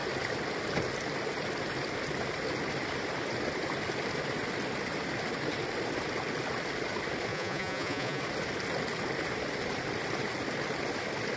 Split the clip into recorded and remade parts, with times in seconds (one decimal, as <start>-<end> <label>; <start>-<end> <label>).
0.0-7.3 recorded; 7.3-8.2 remade; 8.2-11.4 recorded